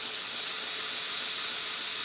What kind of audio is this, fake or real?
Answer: real